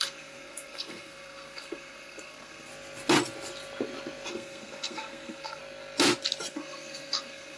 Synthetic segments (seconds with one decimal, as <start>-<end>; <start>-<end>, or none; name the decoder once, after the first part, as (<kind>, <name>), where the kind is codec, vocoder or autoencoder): 0.0-2.7 (codec, SNAC); 4.3-5.6; 6.5-7.6